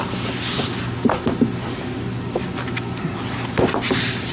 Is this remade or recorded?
recorded